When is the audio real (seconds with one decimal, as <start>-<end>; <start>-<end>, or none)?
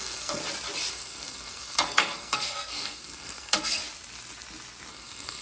0.4-0.9; 3.8-4.9